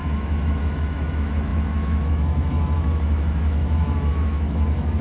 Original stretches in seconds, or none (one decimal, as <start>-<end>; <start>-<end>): none